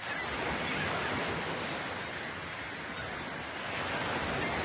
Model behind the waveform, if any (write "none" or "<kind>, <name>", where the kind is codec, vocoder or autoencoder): none